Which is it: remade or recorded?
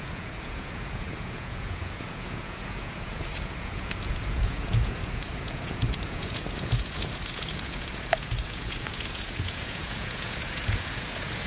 remade